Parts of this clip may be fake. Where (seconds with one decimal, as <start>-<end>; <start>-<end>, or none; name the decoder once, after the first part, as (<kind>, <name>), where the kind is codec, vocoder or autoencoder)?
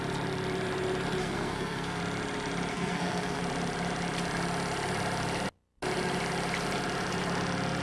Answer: 1.2-2.0 (codec, SNAC); 2.7-3.4